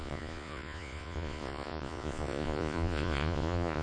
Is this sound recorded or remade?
remade